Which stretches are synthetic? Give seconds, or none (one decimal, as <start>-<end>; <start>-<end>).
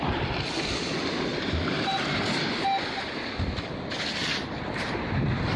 1.3-3.2; 4.2-5.6